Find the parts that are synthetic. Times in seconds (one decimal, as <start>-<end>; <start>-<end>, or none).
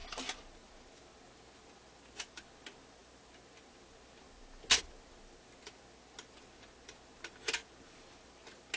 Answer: none